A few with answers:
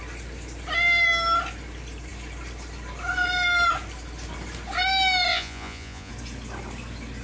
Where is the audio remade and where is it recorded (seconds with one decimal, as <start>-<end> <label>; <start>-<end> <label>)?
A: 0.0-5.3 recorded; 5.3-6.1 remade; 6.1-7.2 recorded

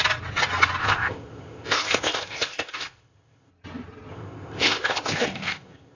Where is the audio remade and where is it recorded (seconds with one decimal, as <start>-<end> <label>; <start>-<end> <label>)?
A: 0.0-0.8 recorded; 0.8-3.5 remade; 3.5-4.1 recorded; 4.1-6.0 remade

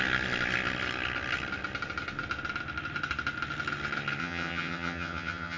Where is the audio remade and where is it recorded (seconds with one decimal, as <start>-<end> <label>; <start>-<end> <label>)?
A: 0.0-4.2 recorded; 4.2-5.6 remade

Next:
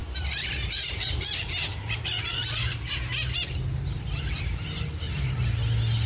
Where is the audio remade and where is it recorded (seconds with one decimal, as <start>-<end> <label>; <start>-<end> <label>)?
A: 0.0-2.7 remade; 2.7-6.1 recorded